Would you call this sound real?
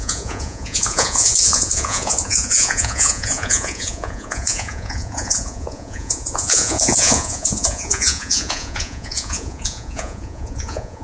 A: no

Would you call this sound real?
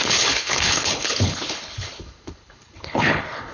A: no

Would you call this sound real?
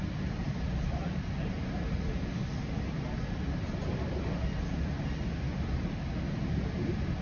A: yes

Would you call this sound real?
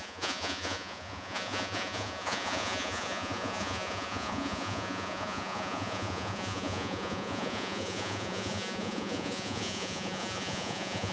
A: no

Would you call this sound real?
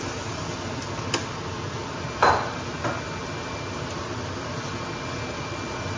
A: yes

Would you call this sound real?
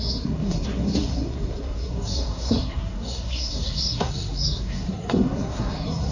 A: no